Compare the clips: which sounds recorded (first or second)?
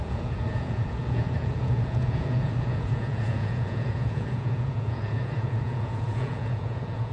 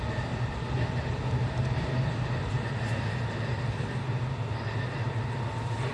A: second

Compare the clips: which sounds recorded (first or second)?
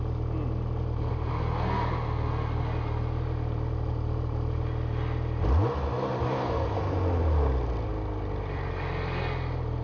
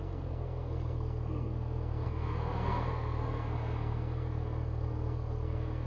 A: first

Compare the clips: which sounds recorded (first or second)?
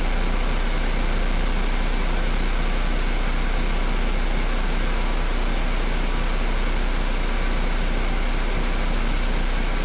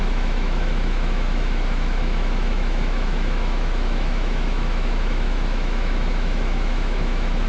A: first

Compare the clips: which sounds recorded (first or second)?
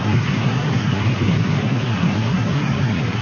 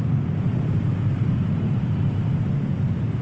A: second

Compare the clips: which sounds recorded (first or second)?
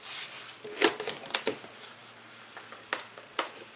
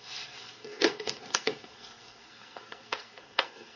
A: first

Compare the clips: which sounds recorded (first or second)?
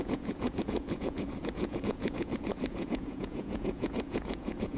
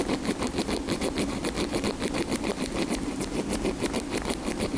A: second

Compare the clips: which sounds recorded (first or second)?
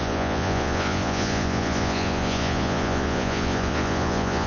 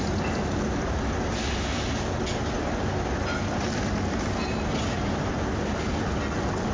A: second